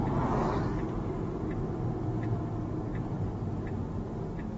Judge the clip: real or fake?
real